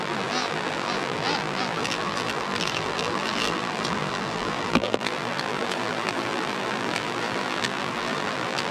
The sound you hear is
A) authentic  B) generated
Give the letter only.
B